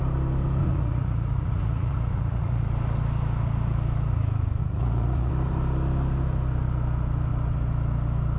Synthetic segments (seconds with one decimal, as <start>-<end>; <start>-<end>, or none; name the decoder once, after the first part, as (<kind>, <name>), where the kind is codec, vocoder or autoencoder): 0.6-2.6 (vocoder, Vocos); 4.6-5.3